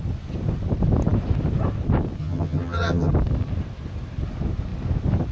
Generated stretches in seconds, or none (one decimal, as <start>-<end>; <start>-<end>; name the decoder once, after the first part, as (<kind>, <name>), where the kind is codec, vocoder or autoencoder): 2.2-3.1 (vocoder, HiFi-GAN)

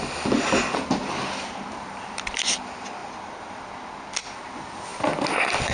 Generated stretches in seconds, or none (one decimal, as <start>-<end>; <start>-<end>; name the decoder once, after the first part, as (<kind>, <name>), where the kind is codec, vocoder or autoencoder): 3.0-3.7 (vocoder, BigVGAN v2)